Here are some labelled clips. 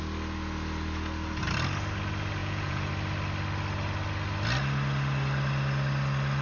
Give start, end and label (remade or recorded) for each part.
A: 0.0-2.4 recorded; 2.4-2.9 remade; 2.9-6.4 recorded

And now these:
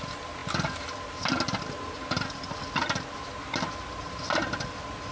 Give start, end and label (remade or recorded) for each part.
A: 0.0-5.1 recorded

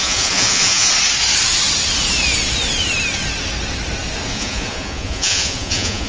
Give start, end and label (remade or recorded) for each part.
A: 0.0-0.9 remade; 0.9-4.3 recorded; 4.3-6.1 remade

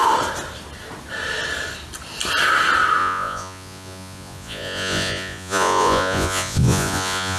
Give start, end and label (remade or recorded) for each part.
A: 0.0-3.0 recorded; 3.0-7.4 remade

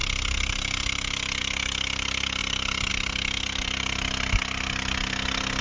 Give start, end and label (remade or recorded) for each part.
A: 0.0-5.6 recorded

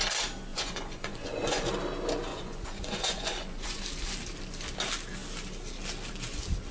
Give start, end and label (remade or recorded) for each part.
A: 0.0-0.5 recorded; 0.5-1.7 remade; 1.7-2.3 recorded; 2.3-3.8 remade; 3.8-6.7 recorded

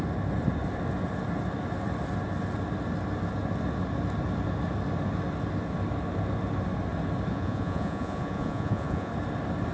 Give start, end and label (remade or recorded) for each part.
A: 0.0-7.3 recorded; 7.3-9.1 remade; 9.1-9.7 recorded

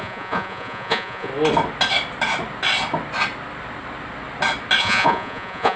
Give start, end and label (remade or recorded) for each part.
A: 0.0-1.3 remade; 1.3-4.8 recorded; 4.8-5.8 remade